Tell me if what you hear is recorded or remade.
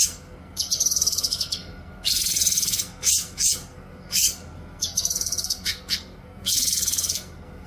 remade